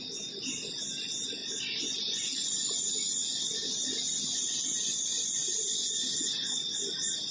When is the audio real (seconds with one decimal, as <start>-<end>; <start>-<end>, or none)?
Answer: 0.0-7.3